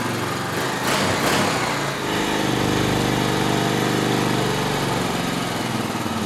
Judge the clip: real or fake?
real